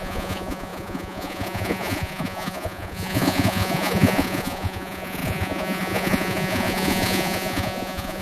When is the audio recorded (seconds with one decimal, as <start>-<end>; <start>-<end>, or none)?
none